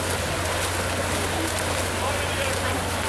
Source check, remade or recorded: recorded